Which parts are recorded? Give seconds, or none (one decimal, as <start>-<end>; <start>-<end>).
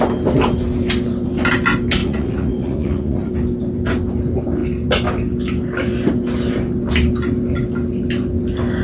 0.0-2.0; 3.3-8.8